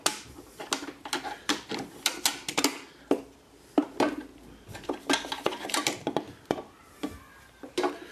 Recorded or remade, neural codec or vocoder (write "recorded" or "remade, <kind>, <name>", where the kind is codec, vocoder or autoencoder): recorded